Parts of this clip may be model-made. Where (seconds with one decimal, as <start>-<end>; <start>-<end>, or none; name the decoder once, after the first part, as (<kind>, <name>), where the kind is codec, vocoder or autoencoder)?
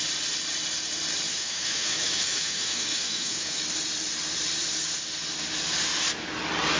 1.3-3.6 (autoencoder, DAC-VAE)